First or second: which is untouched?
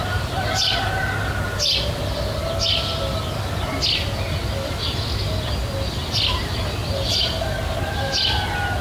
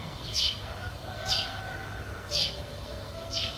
first